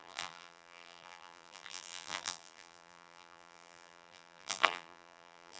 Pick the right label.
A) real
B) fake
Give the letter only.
B